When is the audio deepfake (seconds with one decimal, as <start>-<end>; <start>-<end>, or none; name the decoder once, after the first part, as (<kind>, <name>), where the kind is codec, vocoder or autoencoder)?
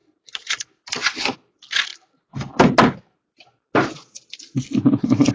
none